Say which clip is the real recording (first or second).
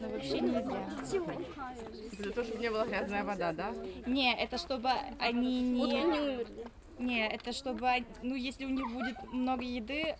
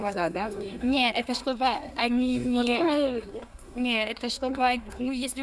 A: first